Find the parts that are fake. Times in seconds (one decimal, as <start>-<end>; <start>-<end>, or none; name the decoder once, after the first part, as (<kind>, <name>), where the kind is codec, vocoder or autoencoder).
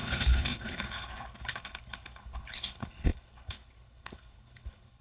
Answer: 0.0-5.0 (codec, HILCodec)